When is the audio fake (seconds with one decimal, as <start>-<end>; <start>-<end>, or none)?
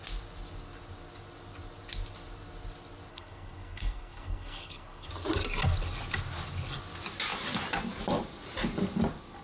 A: 3.1-5.1